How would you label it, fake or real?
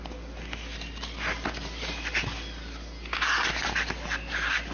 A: real